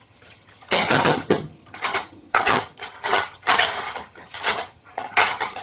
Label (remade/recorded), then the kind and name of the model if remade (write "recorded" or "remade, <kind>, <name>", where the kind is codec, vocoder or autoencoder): remade, vocoder, HiFi-GAN